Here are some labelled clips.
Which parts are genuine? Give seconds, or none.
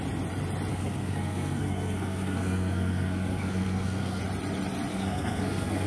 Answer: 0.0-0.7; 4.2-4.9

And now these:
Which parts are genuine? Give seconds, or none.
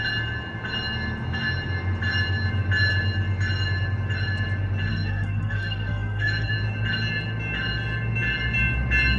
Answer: 0.0-4.9; 6.5-9.2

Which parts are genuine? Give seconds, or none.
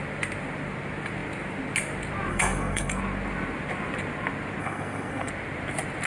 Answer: 0.0-2.3; 3.0-4.6; 5.3-6.1